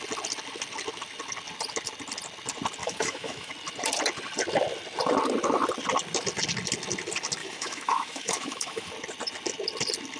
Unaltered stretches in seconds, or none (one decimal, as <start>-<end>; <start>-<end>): 0.0-2.8; 3.5-7.4; 8.9-10.2